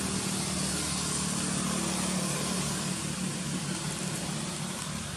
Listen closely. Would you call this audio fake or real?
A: real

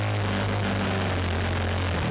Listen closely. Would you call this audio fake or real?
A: real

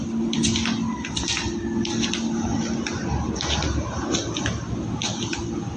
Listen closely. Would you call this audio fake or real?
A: real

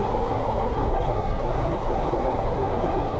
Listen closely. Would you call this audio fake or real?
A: fake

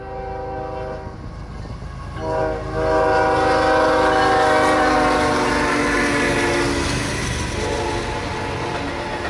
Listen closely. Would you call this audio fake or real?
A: real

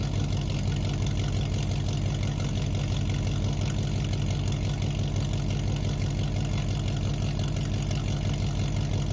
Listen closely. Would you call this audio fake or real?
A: real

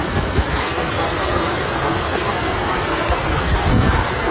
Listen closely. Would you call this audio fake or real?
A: fake